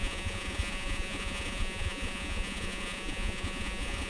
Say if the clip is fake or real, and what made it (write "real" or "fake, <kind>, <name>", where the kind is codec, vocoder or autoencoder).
fake, vocoder, Vocos